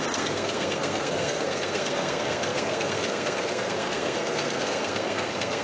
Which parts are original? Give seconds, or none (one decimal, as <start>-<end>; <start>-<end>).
none